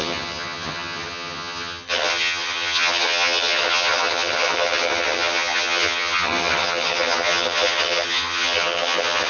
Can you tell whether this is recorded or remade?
remade